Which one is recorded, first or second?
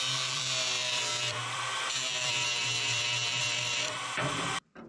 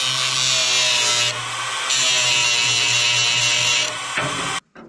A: second